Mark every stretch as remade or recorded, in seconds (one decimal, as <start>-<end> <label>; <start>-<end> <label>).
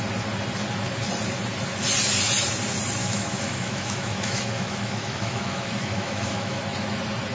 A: 0.0-3.0 recorded; 3.0-6.6 remade; 6.6-7.3 recorded